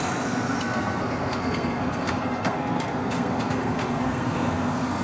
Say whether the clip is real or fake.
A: fake